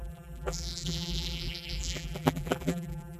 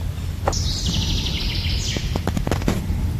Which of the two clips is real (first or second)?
second